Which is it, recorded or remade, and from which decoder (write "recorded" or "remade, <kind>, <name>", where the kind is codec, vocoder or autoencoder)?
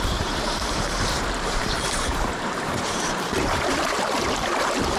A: remade, vocoder, BigVGAN v2